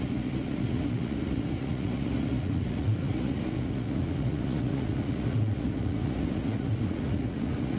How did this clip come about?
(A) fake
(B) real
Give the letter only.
A